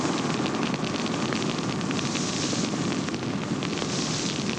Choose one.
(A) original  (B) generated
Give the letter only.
A